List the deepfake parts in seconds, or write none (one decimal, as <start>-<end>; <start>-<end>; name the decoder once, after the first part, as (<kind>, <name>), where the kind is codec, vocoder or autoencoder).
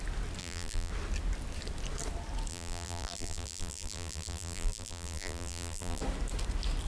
0.4-0.9 (vocoder, BigVGAN v2); 2.5-6.0